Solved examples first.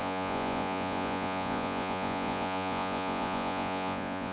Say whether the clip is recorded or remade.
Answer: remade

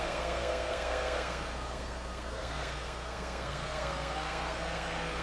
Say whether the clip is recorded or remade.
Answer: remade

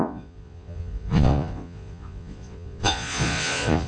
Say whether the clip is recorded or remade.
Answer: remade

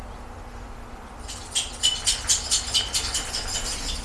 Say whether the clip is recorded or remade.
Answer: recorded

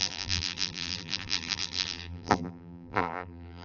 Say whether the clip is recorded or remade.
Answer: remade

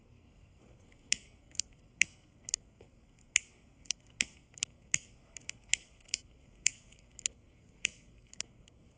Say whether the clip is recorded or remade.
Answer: remade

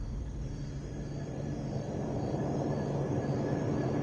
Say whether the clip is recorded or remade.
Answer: recorded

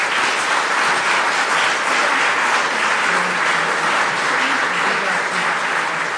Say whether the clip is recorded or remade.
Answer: recorded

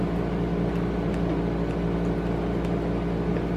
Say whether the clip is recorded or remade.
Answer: recorded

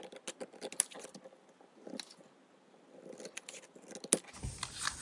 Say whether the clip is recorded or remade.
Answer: recorded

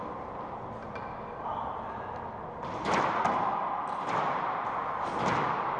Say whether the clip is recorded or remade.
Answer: recorded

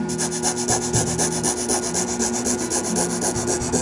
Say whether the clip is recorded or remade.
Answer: recorded